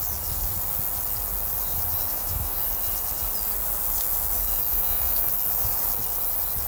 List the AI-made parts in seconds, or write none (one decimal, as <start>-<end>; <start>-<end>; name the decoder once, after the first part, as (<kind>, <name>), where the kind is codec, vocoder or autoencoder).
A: 2.1-2.6 (autoencoder, DAC-VAE); 4.7-5.3